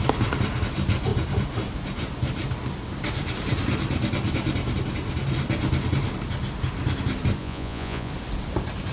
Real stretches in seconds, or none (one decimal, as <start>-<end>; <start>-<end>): 0.0-7.4; 8.1-8.9